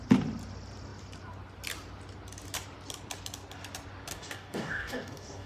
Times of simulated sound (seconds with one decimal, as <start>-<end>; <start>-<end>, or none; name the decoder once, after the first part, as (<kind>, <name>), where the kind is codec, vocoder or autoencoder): 4.1-5.5 (codec, DAC)